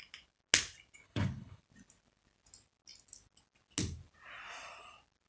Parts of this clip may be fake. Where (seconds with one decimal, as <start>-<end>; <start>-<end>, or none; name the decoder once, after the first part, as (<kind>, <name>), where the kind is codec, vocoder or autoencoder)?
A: 1.0-1.6 (codec, HILCodec)